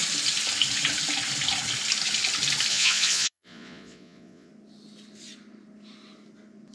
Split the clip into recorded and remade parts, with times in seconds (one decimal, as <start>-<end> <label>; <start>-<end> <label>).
0.0-2.7 recorded; 2.7-4.5 remade; 4.5-6.7 recorded